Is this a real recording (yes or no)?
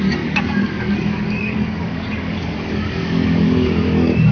no